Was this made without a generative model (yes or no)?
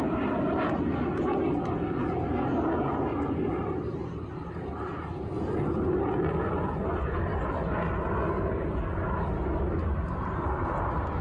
yes